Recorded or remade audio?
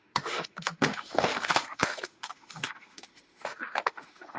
remade